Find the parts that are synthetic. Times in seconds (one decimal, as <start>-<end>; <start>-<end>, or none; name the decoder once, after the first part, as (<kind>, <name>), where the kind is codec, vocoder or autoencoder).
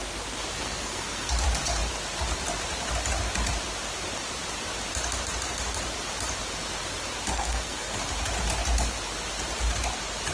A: 0.6-1.3 (codec, SNAC); 7.3-8.0